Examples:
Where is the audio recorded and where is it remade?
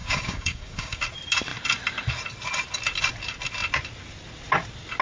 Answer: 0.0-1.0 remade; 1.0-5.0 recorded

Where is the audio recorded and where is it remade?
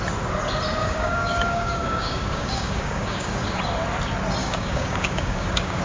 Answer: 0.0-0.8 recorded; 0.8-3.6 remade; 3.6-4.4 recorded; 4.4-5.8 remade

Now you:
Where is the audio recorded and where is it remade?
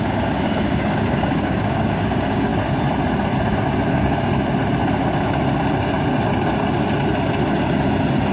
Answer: 0.0-2.5 remade; 2.5-3.9 recorded; 3.9-4.3 remade; 4.3-8.3 recorded